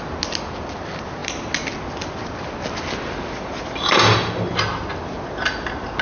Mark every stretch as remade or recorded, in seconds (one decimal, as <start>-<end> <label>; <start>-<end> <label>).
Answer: 0.0-6.0 recorded